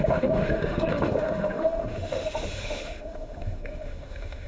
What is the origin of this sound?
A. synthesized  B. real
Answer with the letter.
A